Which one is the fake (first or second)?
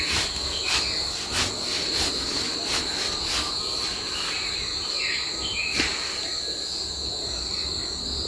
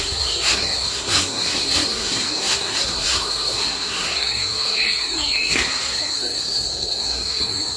second